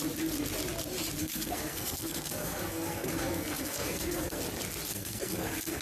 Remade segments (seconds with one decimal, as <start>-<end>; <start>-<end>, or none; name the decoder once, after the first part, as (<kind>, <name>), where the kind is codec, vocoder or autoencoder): 1.2-4.4 (codec, SNAC); 4.9-5.8